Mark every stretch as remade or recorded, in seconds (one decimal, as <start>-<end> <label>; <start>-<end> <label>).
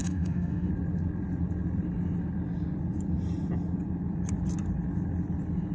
0.0-0.7 remade; 0.7-5.7 recorded